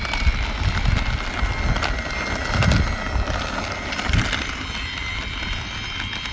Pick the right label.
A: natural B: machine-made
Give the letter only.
A